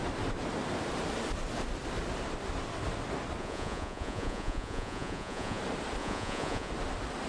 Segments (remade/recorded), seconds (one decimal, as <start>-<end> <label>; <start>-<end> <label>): 0.0-3.4 recorded; 3.4-5.6 remade; 5.6-6.0 recorded; 6.0-6.7 remade; 6.7-7.3 recorded